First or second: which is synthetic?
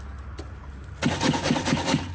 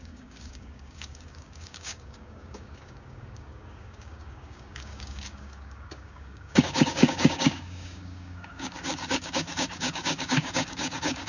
second